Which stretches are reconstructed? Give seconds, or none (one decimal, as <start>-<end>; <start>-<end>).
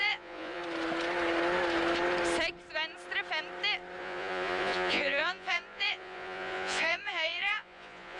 0.0-0.6; 4.0-8.2